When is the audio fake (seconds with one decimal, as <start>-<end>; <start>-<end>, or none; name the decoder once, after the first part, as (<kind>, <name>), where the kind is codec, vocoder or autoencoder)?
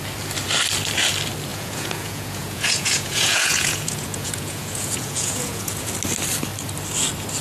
1.5-5.9 (vocoder, Vocos)